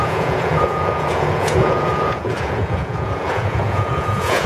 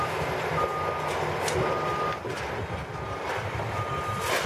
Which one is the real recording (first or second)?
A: second